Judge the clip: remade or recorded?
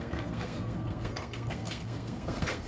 remade